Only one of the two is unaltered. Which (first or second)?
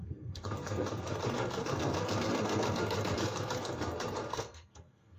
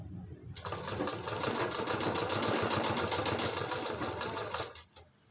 second